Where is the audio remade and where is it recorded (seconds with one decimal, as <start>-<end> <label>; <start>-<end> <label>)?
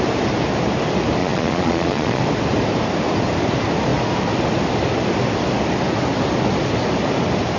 0.0-1.2 recorded; 1.2-2.2 remade; 2.2-7.6 recorded